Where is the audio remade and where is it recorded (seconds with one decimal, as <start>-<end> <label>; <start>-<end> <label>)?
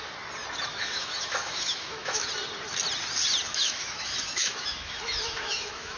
0.0-0.7 recorded; 0.7-2.3 remade; 2.3-3.5 recorded; 3.5-6.0 remade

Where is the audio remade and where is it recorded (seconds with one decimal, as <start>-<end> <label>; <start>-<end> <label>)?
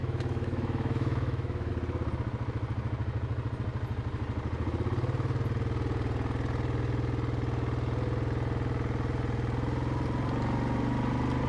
0.0-1.7 remade; 1.7-11.5 recorded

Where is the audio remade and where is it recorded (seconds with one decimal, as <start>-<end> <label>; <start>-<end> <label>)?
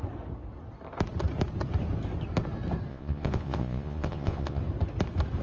0.0-2.9 recorded; 2.9-4.6 remade; 4.6-5.4 recorded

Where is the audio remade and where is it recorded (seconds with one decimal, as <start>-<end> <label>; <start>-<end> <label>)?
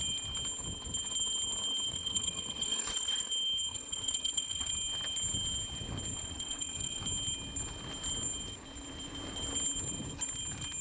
0.0-1.9 recorded; 1.9-3.3 remade; 3.3-3.7 recorded; 3.7-4.7 remade; 4.7-6.1 recorded; 6.1-7.0 remade; 7.0-10.8 recorded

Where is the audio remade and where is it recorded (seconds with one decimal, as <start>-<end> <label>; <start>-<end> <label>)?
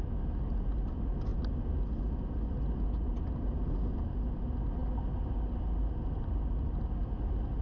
0.0-7.6 recorded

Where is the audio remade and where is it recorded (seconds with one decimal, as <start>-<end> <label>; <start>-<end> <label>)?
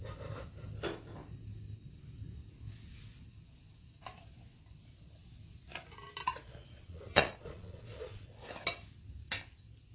0.0-6.2 recorded; 6.2-8.4 remade; 8.4-9.9 recorded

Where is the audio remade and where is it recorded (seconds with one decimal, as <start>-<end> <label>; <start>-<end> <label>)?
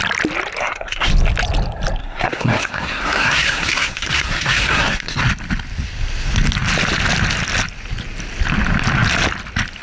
0.0-0.6 recorded; 0.6-1.1 remade; 1.1-2.0 recorded; 2.0-5.2 remade; 5.2-9.8 recorded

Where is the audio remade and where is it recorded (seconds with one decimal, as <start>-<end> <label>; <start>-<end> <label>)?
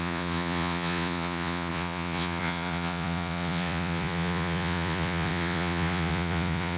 0.0-6.8 remade